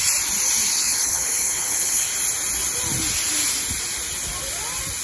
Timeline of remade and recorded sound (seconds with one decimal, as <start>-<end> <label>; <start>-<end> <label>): 0.0-0.7 recorded; 0.7-2.1 remade; 2.1-5.0 recorded